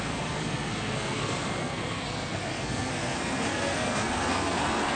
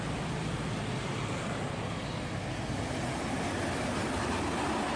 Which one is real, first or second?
second